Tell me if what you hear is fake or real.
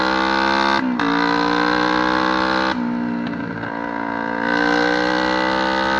real